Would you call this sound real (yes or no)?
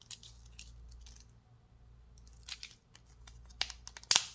yes